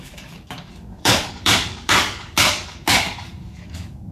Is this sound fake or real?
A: fake